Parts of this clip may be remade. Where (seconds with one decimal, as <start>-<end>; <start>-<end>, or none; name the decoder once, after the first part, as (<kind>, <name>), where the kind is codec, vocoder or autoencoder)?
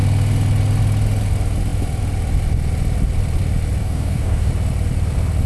3.8-4.5 (codec, DAC)